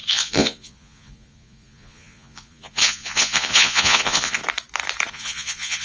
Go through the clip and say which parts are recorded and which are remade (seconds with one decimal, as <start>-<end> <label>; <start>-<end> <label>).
0.0-4.4 remade; 4.4-5.1 recorded; 5.1-5.8 remade